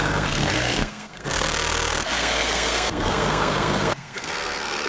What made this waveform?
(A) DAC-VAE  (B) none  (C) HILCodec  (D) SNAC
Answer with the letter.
D